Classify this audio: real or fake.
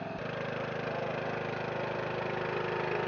real